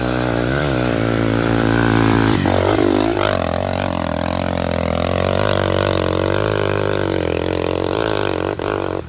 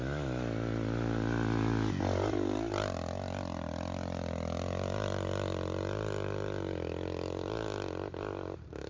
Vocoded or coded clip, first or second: first